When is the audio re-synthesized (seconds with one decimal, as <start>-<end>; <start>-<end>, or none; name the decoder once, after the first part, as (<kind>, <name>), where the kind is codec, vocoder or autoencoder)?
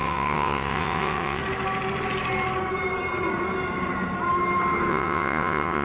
0.0-1.4 (vocoder, WaveNeXt); 4.9-5.8